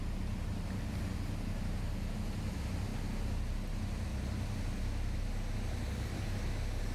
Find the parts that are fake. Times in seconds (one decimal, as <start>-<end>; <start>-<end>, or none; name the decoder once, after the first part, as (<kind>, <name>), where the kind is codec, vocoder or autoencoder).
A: none